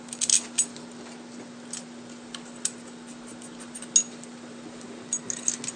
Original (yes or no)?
yes